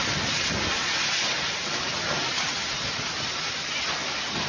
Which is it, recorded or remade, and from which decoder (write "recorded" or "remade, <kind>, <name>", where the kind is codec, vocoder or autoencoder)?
recorded